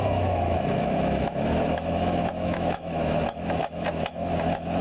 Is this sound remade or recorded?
remade